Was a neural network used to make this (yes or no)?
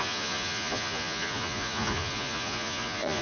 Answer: yes